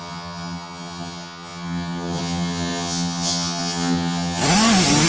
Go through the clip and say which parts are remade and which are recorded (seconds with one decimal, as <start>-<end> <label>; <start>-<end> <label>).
0.0-4.4 remade; 4.4-5.1 recorded